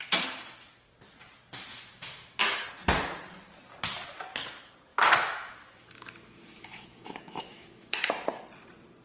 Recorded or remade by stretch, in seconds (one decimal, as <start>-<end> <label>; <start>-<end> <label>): 0.0-1.7 recorded; 1.7-2.4 remade; 2.4-4.9 recorded; 4.9-8.1 remade; 8.1-9.0 recorded